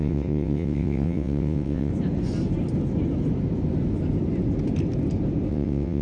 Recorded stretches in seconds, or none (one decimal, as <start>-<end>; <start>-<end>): 1.9-5.5